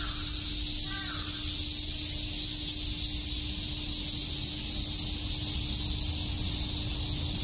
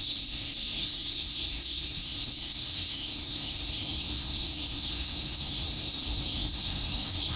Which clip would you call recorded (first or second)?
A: first